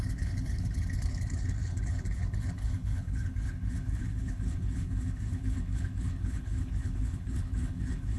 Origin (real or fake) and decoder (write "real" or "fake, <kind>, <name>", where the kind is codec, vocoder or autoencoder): fake, codec, HILCodec